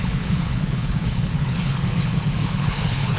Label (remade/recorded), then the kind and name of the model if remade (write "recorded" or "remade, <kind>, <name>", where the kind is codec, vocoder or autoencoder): remade, codec, HILCodec